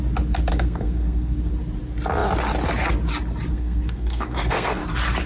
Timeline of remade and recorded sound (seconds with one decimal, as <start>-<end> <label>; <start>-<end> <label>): 0.0-0.5 recorded; 0.5-1.5 remade; 1.5-3.5 recorded; 3.5-4.8 remade; 4.8-5.3 recorded